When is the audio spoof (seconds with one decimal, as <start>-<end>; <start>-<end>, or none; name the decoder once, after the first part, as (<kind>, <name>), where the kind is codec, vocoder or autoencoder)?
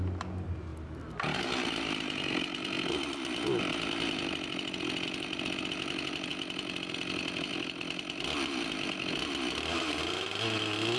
none